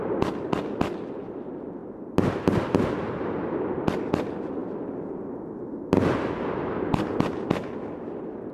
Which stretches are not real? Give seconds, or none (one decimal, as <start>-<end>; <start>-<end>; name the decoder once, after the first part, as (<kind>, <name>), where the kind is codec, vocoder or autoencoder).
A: none